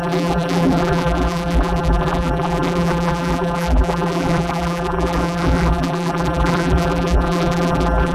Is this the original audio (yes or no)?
no